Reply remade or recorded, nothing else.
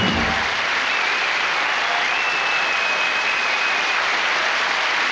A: recorded